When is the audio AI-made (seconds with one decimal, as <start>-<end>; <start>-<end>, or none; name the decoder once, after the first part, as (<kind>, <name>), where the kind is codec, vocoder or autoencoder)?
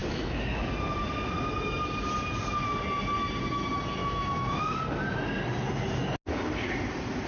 0.0-0.7 (autoencoder, DAC-VAE); 4.0-4.7